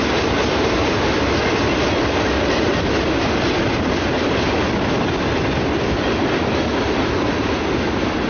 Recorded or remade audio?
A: recorded